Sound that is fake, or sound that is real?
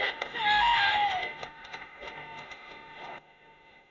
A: fake